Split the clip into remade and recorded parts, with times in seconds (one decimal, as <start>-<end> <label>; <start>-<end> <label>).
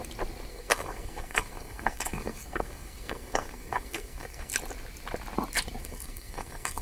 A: 0.0-0.5 recorded; 0.5-4.5 remade; 4.5-5.8 recorded; 5.8-6.8 remade